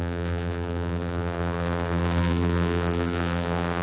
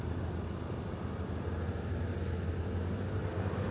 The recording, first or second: second